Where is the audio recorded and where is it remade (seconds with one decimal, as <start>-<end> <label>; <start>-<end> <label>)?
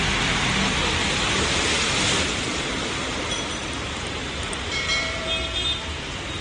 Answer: 0.0-4.2 recorded; 4.2-5.3 remade; 5.3-6.4 recorded